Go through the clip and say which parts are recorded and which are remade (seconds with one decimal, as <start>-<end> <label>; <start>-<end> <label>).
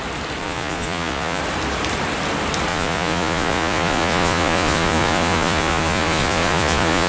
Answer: 0.0-0.4 recorded; 0.4-1.4 remade; 1.4-2.7 recorded; 2.7-7.1 remade